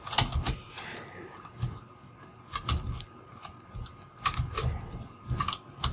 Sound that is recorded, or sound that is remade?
recorded